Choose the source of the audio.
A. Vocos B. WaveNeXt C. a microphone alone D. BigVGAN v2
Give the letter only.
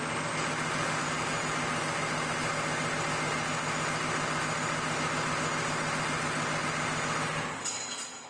C